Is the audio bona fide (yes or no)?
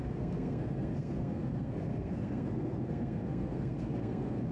no